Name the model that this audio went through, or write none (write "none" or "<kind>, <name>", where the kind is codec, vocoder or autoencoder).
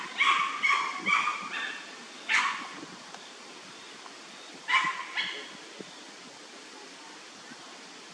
none